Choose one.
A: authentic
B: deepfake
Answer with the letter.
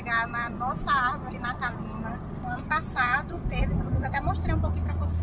A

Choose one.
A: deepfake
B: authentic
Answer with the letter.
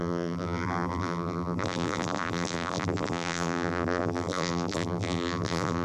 A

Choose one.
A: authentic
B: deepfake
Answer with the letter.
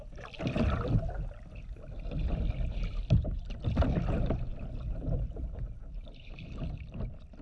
A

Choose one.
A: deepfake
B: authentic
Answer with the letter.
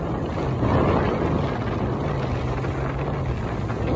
B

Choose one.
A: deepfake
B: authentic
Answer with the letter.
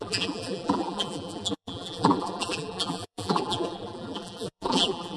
A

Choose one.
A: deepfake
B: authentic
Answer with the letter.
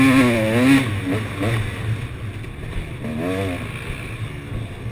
B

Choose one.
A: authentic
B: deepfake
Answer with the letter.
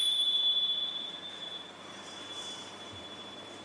B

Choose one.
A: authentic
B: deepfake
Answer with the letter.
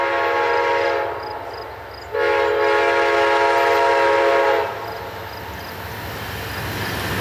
A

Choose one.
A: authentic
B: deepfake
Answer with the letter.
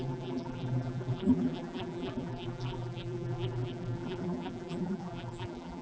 B